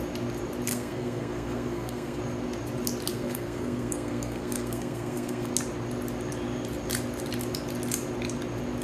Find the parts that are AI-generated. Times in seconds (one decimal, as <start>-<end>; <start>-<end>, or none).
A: 0.7-2.2; 3.1-5.5